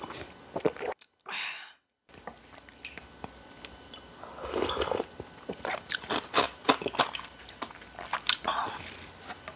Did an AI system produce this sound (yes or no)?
no